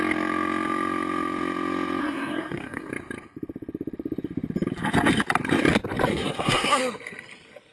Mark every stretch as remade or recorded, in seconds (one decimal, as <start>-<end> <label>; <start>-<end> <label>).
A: 0.0-2.0 recorded; 2.0-2.9 remade; 2.9-6.1 recorded; 6.1-6.8 remade; 6.8-7.7 recorded